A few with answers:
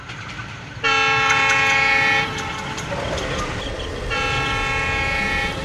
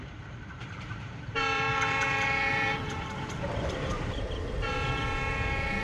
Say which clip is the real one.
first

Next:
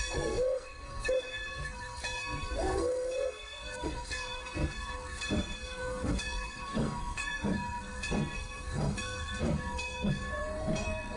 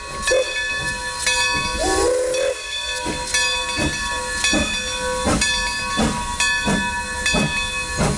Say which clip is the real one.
second